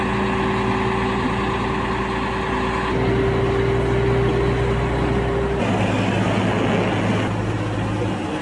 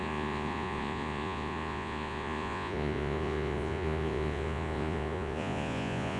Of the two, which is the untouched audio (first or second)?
first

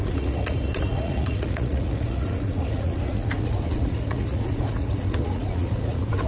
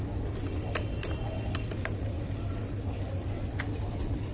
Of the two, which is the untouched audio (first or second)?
second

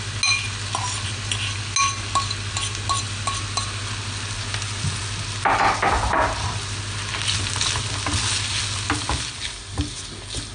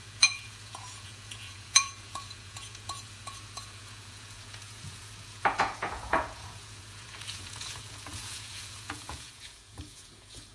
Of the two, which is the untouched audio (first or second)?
first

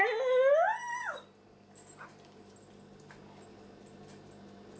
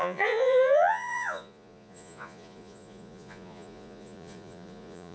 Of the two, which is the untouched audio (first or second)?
first